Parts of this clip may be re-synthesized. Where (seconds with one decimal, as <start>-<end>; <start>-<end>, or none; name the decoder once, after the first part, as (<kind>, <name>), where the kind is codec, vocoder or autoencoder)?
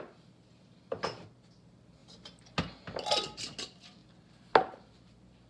none